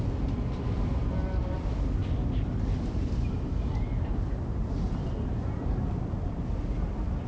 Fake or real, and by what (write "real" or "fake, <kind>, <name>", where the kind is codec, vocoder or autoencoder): real